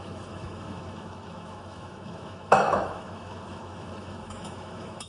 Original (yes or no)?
no